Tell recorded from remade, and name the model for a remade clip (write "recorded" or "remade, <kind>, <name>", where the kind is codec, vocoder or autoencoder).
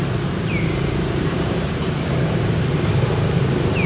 remade, vocoder, BigVGAN v2